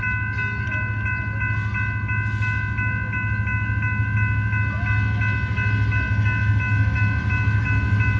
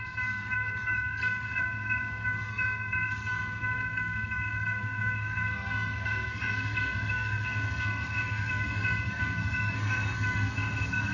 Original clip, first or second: first